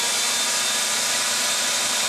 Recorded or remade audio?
recorded